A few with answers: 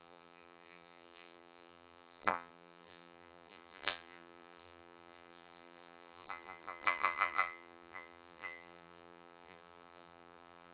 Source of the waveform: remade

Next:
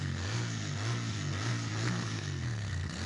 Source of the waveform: remade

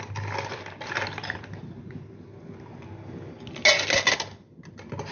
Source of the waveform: recorded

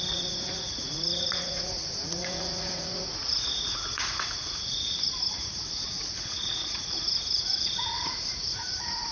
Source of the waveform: remade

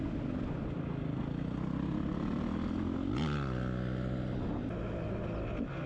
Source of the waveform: recorded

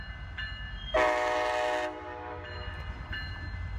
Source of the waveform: recorded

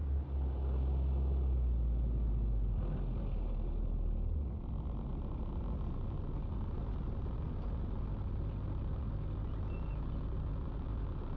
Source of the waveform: recorded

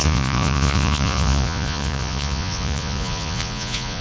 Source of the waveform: remade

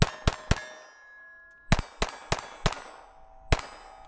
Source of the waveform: recorded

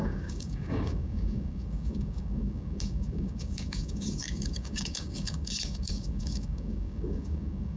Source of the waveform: remade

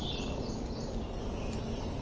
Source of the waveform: recorded